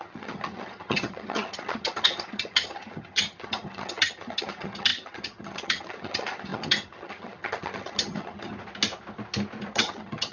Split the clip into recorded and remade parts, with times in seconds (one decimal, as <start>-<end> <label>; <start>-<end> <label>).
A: 0.0-8.5 remade; 8.5-9.7 recorded; 9.7-10.3 remade